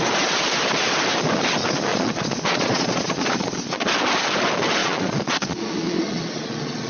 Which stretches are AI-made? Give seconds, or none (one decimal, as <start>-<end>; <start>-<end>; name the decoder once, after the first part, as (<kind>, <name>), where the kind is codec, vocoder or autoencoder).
1.9-3.9 (vocoder, Vocos); 4.8-6.9